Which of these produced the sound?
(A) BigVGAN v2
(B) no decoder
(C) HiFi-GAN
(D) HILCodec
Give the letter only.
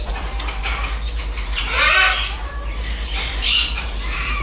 A